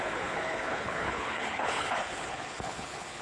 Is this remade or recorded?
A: remade